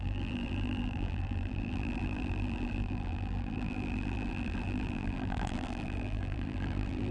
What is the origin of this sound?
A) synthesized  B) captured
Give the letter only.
A